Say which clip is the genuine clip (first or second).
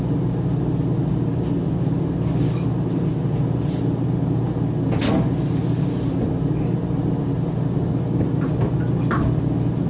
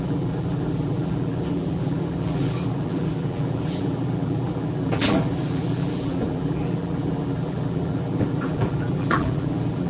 first